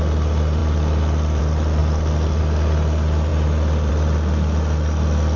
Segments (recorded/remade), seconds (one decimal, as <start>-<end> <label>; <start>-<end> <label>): 0.0-0.6 recorded; 0.6-1.4 remade; 1.4-5.4 recorded